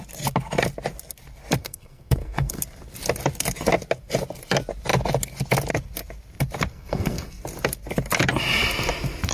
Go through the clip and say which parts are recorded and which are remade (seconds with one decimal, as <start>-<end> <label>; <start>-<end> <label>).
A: 0.0-1.6 recorded; 1.6-2.6 remade; 2.6-6.7 recorded; 6.7-7.4 remade; 7.4-9.3 recorded

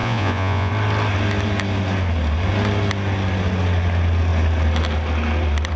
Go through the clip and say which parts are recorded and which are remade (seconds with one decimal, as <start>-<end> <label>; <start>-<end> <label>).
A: 0.0-0.7 remade; 0.7-5.8 recorded

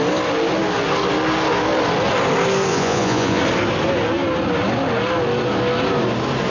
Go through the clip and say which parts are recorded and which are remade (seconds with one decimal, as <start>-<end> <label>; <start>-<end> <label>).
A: 0.0-2.7 recorded; 2.7-3.4 remade; 3.4-6.5 recorded

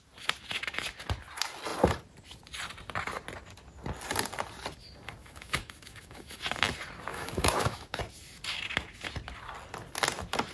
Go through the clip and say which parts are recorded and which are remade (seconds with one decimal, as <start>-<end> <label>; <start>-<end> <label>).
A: 0.0-5.2 recorded; 5.2-6.4 remade; 6.4-7.1 recorded; 7.1-8.0 remade; 8.0-10.5 recorded